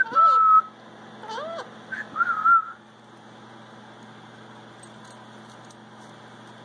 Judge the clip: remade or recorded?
recorded